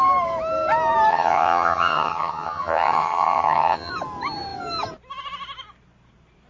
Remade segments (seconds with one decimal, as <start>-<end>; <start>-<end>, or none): 1.1-3.9